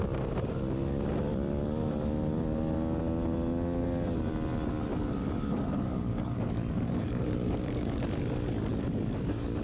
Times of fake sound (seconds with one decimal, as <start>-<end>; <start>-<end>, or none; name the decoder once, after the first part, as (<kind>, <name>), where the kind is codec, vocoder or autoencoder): 4.9-8.0 (codec, DAC); 8.7-9.6